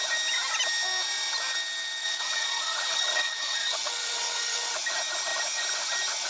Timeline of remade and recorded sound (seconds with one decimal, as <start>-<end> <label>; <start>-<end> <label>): 0.0-2.0 recorded; 2.0-4.7 remade; 4.7-6.3 recorded